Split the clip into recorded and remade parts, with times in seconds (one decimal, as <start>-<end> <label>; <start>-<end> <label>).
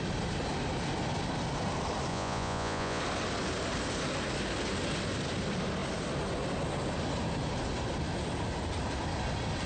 0.0-2.1 recorded; 2.1-3.0 remade; 3.0-9.7 recorded